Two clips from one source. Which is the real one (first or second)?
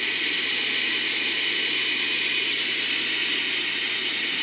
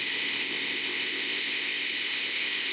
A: first